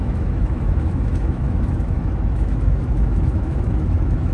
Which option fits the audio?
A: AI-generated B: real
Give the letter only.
A